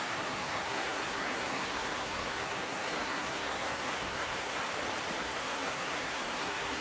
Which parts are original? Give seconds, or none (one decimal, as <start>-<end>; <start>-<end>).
4.6-5.2